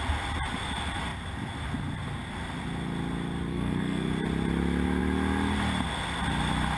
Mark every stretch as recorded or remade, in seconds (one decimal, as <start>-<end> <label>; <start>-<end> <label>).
0.0-3.5 recorded; 3.5-4.1 remade; 4.1-6.8 recorded